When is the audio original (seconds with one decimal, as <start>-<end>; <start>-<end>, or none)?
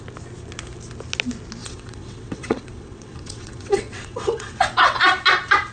0.0-1.6; 5.0-5.7